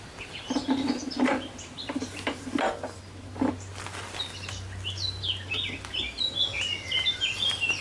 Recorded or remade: recorded